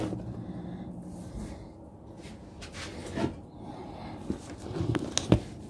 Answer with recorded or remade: recorded